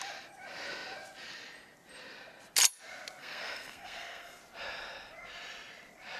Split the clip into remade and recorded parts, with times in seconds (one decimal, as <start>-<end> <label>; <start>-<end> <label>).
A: 0.0-3.2 recorded; 3.2-4.4 remade; 4.4-6.2 recorded